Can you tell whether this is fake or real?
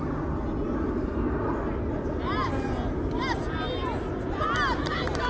real